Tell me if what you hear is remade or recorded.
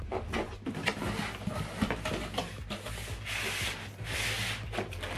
recorded